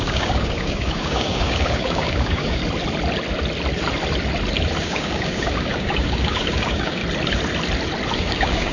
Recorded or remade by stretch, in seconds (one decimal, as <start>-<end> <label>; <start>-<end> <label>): 0.0-2.6 remade; 2.6-4.8 recorded; 4.8-7.0 remade; 7.0-8.1 recorded; 8.1-8.7 remade